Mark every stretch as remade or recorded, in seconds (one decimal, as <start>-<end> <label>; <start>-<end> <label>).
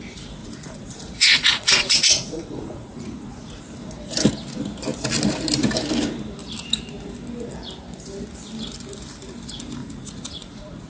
0.0-0.4 recorded; 0.4-3.6 remade; 3.6-9.8 recorded; 9.8-10.9 remade